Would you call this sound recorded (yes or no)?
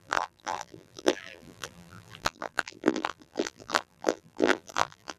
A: no